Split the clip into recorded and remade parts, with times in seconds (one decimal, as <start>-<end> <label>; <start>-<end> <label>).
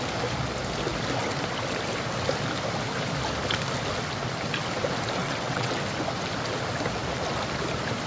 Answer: 0.0-5.2 recorded; 5.2-5.8 remade; 5.8-8.1 recorded